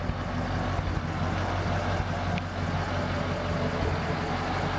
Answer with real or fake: real